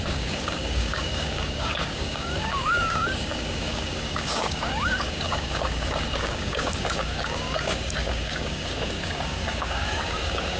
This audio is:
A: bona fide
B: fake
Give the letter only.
B